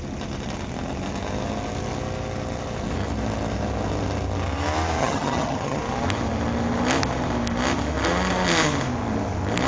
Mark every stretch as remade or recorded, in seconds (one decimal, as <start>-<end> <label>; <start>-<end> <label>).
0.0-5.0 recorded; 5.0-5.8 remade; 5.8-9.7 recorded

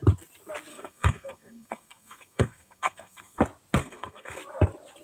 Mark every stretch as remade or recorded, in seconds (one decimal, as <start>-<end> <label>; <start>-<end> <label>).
0.0-0.7 recorded; 0.7-3.4 remade; 3.4-3.8 recorded; 3.8-4.4 remade; 4.4-5.0 recorded

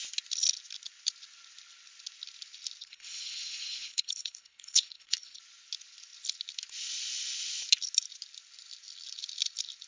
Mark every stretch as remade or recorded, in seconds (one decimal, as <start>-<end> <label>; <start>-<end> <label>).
0.0-2.8 recorded; 2.8-5.4 remade; 5.4-9.9 recorded

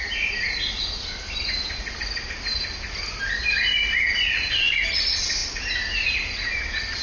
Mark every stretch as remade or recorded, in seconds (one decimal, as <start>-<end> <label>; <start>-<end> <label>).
0.0-7.0 recorded

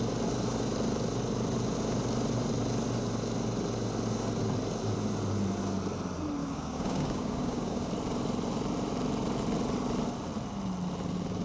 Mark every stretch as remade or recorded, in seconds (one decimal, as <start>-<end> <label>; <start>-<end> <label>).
0.0-6.4 recorded; 6.4-7.9 remade; 7.9-11.4 recorded